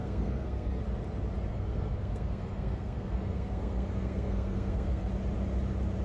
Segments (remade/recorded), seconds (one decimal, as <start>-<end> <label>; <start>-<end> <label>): 0.0-0.8 remade; 0.8-1.5 recorded; 1.5-5.1 remade; 5.1-6.0 recorded